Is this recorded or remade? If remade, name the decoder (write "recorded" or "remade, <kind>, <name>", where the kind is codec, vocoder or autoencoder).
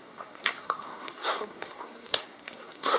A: remade, codec, SNAC